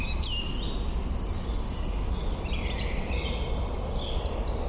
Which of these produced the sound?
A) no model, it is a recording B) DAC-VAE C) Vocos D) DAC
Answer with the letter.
A